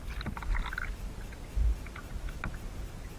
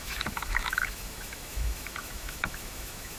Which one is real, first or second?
first